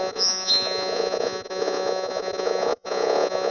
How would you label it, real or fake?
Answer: fake